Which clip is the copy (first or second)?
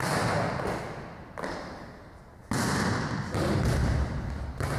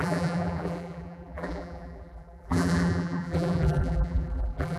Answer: second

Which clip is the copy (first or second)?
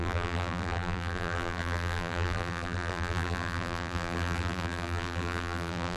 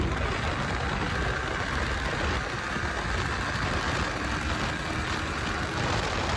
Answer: first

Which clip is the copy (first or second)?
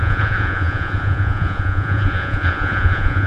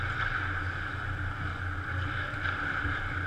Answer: first